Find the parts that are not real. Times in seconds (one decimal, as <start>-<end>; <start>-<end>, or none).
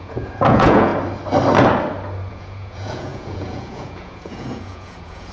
0.0-0.9; 2.3-5.3